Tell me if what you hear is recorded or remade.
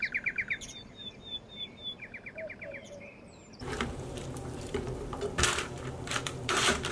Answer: remade